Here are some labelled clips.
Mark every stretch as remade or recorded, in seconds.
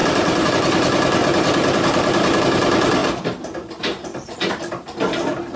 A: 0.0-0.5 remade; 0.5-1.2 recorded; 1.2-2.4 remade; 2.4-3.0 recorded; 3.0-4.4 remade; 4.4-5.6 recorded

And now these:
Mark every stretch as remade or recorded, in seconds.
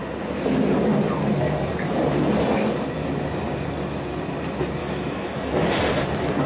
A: 0.0-4.8 recorded; 4.8-5.8 remade; 5.8-6.5 recorded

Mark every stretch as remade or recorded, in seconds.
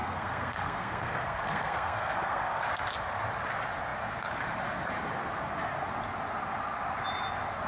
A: 0.0-2.6 remade; 2.6-7.7 recorded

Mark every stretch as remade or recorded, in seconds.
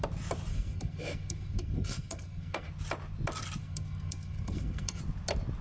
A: 0.0-0.5 recorded; 0.5-2.7 remade; 2.7-3.6 recorded; 3.6-5.0 remade; 5.0-5.6 recorded